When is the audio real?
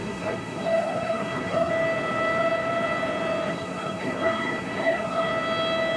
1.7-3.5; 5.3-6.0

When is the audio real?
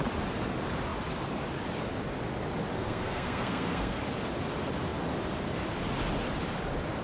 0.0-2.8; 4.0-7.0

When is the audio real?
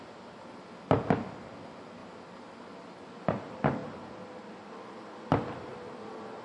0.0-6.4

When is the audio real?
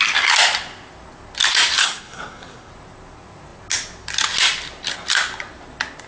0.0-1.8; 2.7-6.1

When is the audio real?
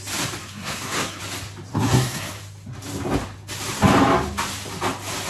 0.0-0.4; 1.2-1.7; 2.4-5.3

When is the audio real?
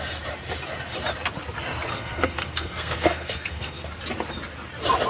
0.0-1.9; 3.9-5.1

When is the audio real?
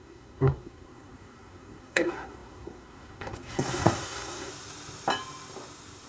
4.5-6.1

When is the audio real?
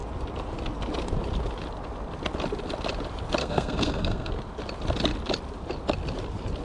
0.0-3.4; 4.3-6.6